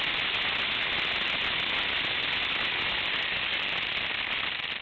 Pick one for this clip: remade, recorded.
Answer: recorded